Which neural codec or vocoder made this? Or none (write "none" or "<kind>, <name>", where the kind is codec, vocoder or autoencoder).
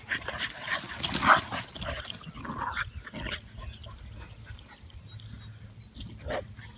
none